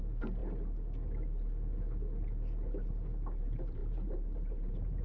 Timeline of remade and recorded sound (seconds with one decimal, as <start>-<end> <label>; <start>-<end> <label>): 0.0-0.4 remade; 0.4-3.4 recorded; 3.4-5.0 remade